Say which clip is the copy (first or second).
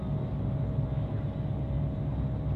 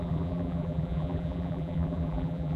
second